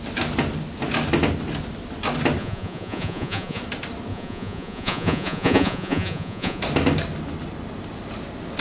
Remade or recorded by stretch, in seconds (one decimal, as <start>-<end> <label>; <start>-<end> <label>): 0.0-2.4 recorded; 2.4-3.6 remade; 3.6-4.1 recorded; 4.1-6.6 remade; 6.6-8.6 recorded